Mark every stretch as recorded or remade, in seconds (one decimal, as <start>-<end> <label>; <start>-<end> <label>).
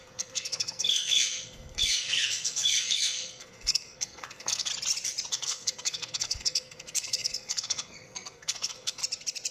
0.0-4.7 remade; 4.7-5.3 recorded; 5.3-9.0 remade; 9.0-9.5 recorded